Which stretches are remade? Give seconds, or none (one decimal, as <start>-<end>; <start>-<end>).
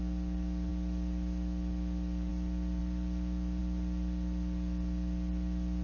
none